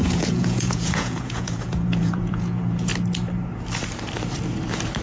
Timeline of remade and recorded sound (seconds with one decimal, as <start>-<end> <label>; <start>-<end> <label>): 0.0-2.9 remade; 2.9-5.0 recorded